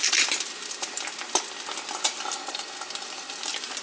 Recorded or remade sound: recorded